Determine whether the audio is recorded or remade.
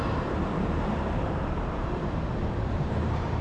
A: remade